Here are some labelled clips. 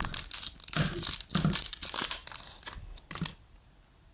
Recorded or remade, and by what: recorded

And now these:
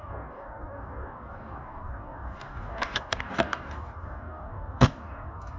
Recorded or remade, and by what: remade, codec, DAC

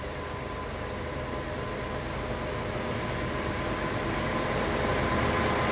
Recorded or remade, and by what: recorded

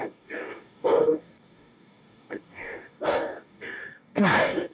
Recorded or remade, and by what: remade, codec, DAC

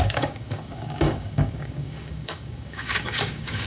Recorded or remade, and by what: remade, codec, DAC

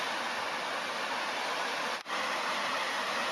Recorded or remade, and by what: recorded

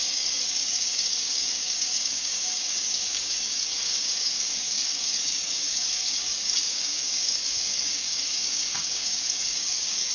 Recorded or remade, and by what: remade, codec, DAC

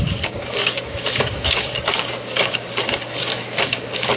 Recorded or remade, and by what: remade, codec, DAC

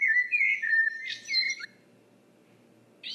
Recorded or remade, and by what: recorded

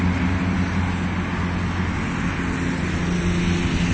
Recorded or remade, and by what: recorded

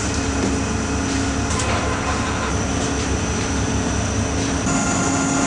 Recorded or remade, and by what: recorded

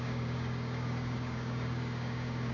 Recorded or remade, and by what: remade, codec, DAC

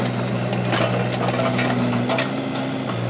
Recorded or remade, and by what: recorded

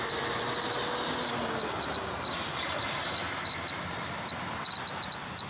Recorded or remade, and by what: recorded